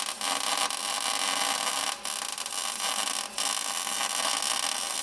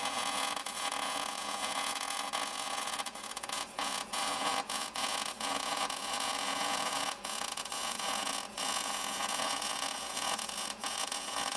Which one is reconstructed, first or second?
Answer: second